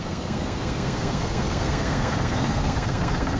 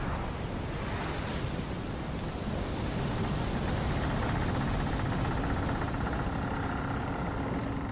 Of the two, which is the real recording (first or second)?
second